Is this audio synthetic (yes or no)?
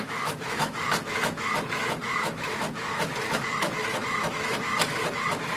yes